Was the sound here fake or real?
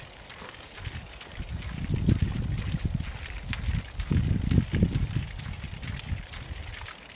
real